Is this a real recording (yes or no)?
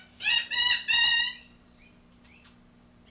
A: no